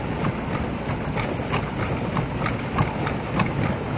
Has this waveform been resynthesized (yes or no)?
no